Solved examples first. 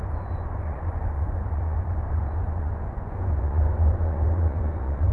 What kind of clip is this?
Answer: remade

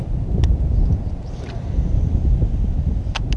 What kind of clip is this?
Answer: recorded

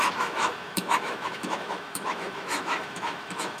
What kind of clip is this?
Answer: remade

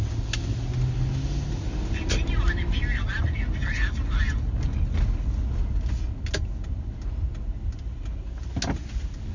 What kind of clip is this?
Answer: recorded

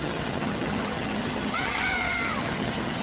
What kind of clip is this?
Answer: remade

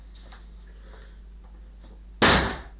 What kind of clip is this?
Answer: recorded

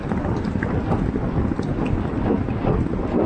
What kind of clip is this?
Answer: recorded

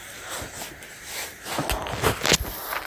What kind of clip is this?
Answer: recorded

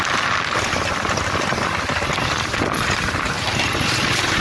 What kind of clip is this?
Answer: recorded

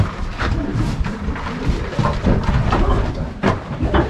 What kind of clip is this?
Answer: remade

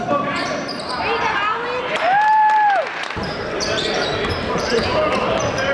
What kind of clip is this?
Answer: remade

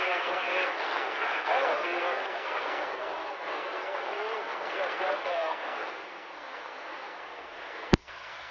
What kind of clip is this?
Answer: remade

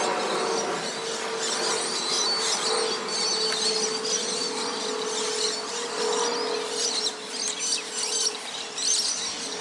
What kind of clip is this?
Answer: recorded